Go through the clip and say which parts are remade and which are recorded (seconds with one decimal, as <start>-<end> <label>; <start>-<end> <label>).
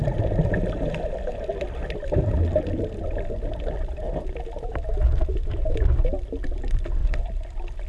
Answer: 0.0-7.9 recorded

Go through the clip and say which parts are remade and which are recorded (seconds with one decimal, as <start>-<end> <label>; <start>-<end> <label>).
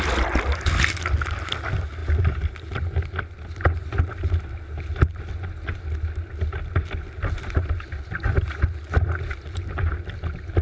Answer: 0.0-10.6 recorded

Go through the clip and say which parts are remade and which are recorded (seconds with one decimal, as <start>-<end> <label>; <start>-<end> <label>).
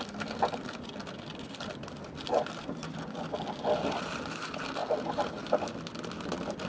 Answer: 0.0-6.7 recorded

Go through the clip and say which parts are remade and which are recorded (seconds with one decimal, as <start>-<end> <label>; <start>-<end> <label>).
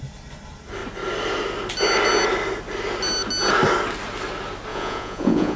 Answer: 0.0-4.7 recorded; 4.7-5.6 remade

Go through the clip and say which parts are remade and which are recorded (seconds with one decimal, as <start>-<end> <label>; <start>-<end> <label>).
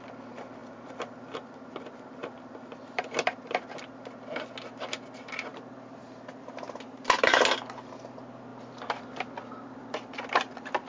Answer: 0.0-0.6 recorded; 0.6-1.7 remade; 1.7-2.2 recorded; 2.2-4.3 remade; 4.3-5.5 recorded; 5.5-7.4 remade; 7.4-8.5 recorded; 8.5-10.2 remade; 10.2-10.9 recorded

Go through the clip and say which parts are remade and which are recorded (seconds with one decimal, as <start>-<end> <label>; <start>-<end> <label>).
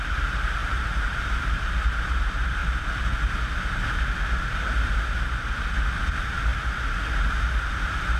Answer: 0.0-2.6 remade; 2.6-6.1 recorded; 6.1-6.5 remade; 6.5-7.7 recorded; 7.7-8.2 remade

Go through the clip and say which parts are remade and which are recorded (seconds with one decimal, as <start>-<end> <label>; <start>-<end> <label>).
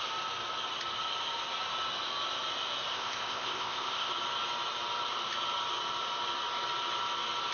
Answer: 0.0-2.9 recorded; 2.9-4.1 remade; 4.1-7.5 recorded